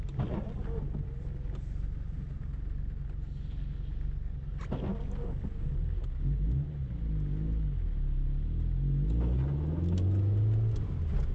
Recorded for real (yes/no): yes